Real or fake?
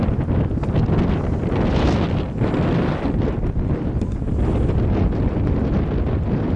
real